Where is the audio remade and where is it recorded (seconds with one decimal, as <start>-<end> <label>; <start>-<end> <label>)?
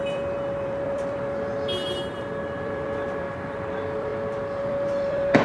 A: 0.0-1.5 remade; 1.5-2.1 recorded; 2.1-4.1 remade; 4.1-4.6 recorded; 4.6-5.4 remade